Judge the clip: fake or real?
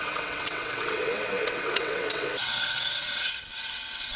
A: fake